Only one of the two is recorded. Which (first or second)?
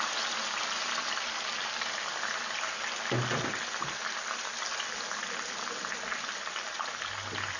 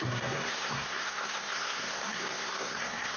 first